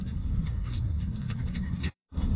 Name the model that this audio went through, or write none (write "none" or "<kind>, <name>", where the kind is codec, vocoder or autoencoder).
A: codec, SNAC